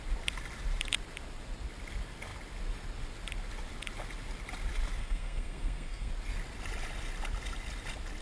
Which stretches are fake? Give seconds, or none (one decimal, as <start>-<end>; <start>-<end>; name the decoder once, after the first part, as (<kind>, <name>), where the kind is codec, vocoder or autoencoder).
5.0-6.1 (codec, SNAC)